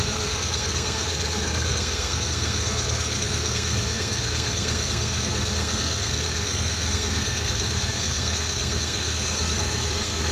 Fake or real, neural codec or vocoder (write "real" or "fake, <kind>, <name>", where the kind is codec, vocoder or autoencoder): fake, codec, SNAC